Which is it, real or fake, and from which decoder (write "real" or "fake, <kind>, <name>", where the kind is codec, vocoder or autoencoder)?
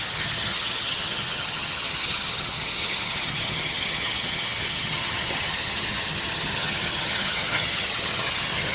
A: fake, vocoder, HiFi-GAN